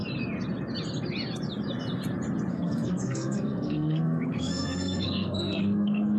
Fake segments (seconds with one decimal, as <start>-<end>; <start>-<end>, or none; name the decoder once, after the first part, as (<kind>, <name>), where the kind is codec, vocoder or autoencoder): 2.5-6.2 (codec, SNAC)